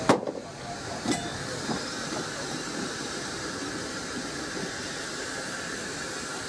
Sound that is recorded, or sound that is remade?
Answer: remade